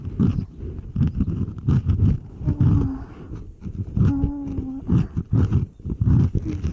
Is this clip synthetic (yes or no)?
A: no